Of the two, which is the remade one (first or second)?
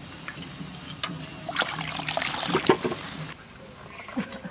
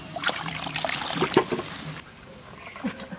second